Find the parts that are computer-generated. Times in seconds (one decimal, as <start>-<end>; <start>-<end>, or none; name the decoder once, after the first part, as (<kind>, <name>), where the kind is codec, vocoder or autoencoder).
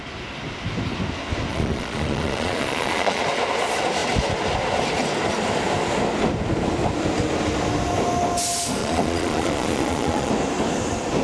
1.5-3.2 (vocoder, Vocos); 8.8-10.3